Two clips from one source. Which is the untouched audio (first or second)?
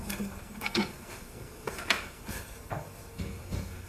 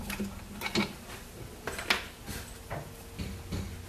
second